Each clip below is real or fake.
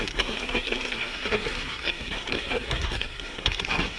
fake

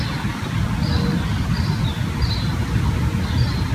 real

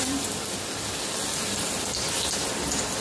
real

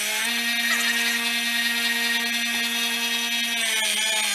real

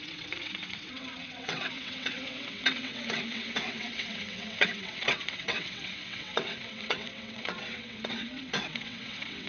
fake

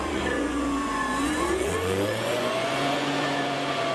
fake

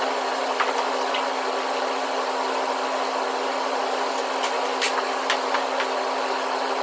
real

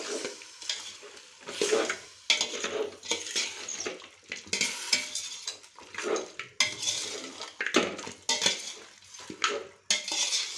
real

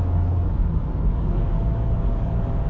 fake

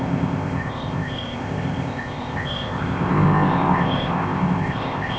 fake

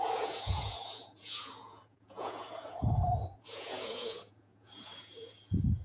fake